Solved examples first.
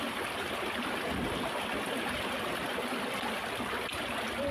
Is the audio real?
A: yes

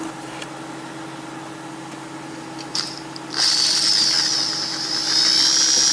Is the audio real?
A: yes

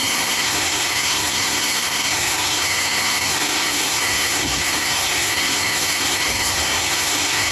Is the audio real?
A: no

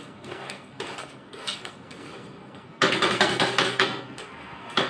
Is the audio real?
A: no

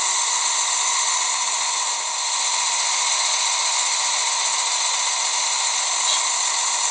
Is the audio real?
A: yes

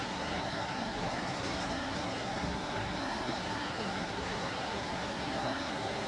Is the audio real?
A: no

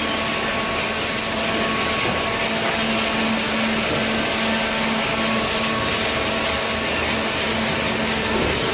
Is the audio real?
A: yes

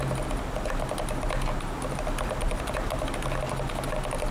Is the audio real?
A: yes